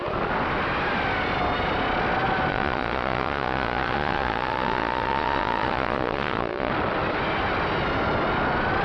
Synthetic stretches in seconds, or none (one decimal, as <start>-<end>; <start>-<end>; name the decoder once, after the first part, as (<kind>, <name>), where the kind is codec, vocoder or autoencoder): 2.5-6.7 (vocoder, Vocos)